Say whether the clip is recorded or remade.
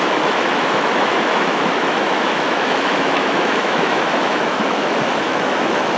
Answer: remade